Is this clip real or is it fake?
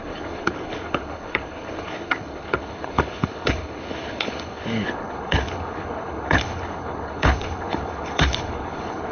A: fake